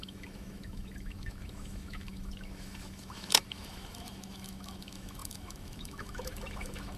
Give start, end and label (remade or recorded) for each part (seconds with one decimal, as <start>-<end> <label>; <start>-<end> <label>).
0.0-7.0 remade